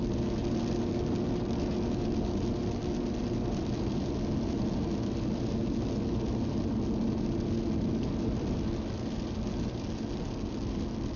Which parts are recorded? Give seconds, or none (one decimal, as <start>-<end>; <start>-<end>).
0.0-11.2